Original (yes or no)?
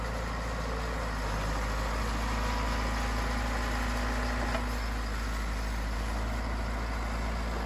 yes